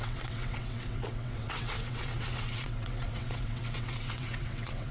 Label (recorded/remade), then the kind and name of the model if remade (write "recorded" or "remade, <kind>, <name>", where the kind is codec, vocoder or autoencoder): remade, vocoder, WaveNeXt